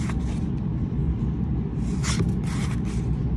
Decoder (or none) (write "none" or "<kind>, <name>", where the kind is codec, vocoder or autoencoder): none